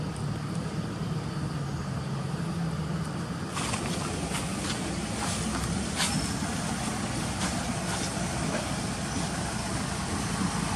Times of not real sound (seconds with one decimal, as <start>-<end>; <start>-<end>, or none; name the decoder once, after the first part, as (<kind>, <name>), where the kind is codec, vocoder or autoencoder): none